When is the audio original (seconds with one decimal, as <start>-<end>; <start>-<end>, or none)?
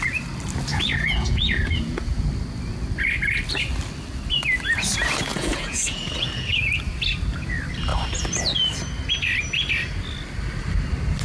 0.0-0.7; 2.3-5.3; 6.6-11.2